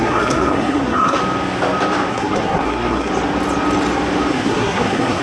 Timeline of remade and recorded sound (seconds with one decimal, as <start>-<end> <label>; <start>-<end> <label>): 0.0-1.2 remade; 1.2-2.1 recorded; 2.1-3.1 remade; 3.1-4.3 recorded; 4.3-5.2 remade